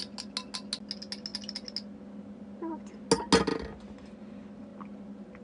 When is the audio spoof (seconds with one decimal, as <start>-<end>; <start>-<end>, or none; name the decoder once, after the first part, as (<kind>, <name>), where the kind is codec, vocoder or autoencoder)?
none